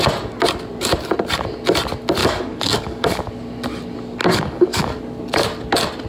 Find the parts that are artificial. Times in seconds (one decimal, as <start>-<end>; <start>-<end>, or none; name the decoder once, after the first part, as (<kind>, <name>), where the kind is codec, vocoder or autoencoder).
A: 2.2-3.3 (codec, DAC); 4.2-5.0